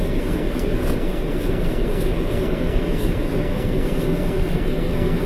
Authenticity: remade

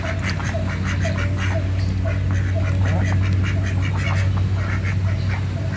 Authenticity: recorded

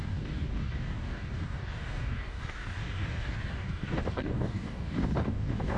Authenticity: remade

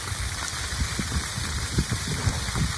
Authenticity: recorded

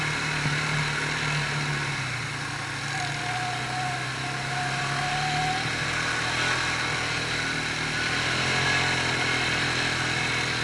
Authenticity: recorded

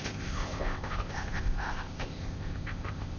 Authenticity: remade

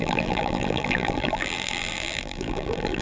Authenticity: remade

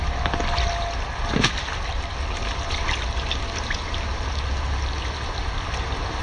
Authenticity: recorded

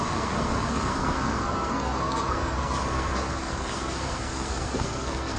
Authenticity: remade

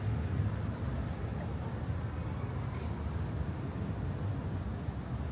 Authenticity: recorded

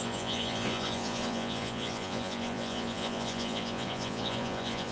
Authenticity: remade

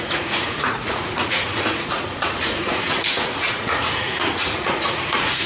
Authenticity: remade